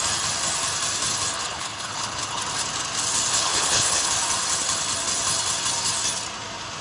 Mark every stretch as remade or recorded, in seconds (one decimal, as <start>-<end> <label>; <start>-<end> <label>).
0.0-1.5 recorded; 1.5-2.4 remade; 2.4-3.4 recorded; 3.4-4.1 remade; 4.1-6.8 recorded